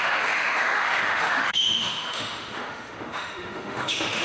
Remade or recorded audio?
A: remade